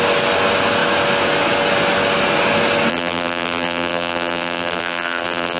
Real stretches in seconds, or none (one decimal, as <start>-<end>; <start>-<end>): 0.0-2.9